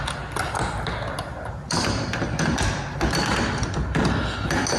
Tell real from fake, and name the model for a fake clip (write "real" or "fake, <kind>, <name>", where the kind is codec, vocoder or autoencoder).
real